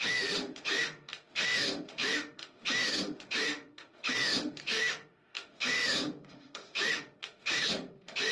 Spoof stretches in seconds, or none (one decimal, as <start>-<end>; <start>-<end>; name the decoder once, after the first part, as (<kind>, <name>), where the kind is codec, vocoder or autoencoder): 0.0-8.3 (autoencoder, DAC-VAE)